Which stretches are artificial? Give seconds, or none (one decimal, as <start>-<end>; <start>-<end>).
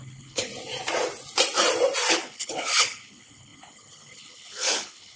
0.0-0.5; 2.1-5.2